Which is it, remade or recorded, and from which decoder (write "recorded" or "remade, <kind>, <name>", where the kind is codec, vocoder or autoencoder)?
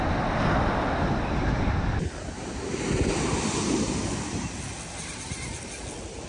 recorded